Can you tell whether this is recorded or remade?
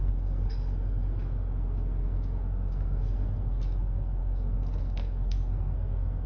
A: remade